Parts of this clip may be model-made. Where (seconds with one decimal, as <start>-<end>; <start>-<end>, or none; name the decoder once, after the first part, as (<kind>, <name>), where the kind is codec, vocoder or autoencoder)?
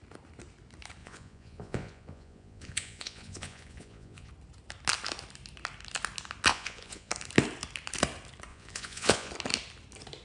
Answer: 1.0-4.3 (vocoder, Vocos); 6.5-7.1; 8.5-9.3